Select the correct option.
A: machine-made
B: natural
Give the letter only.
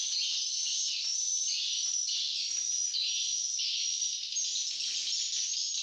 B